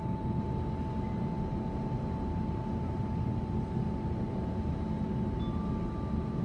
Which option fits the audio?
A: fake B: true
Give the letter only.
B